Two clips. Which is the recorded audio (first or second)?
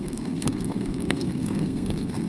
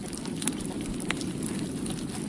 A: second